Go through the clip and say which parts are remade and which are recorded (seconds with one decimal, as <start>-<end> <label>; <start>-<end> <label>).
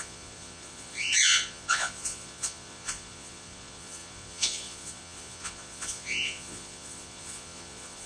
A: 0.0-8.1 remade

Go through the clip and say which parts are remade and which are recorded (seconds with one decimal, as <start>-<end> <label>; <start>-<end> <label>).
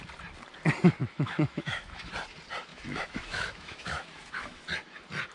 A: 0.0-1.0 recorded; 1.0-2.1 remade; 2.1-2.7 recorded; 2.7-4.6 remade; 4.6-5.3 recorded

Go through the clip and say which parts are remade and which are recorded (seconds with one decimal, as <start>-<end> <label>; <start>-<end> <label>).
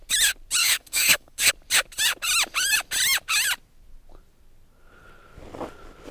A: 0.0-0.6 recorded; 0.6-1.5 remade; 1.5-6.1 recorded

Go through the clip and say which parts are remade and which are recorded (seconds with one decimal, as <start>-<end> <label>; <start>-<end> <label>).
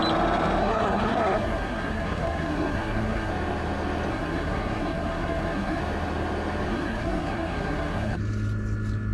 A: 0.0-0.6 recorded; 0.6-3.3 remade; 3.3-4.1 recorded; 4.1-5.8 remade; 5.8-6.7 recorded; 6.7-8.2 remade; 8.2-9.1 recorded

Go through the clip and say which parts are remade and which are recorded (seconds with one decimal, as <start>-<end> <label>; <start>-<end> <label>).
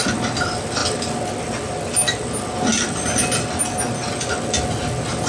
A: 0.0-5.3 recorded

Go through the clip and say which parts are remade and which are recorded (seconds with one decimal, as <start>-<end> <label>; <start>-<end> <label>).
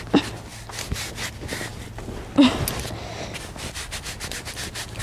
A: 0.0-5.0 recorded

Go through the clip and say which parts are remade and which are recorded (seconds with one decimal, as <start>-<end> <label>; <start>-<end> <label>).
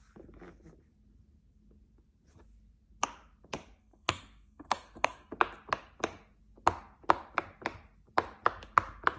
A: 0.0-3.8 recorded; 3.8-5.3 remade; 5.3-9.2 recorded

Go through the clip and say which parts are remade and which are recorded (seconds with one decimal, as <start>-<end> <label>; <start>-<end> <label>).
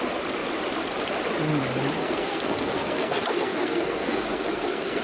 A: 0.0-2.0 recorded; 2.0-5.0 remade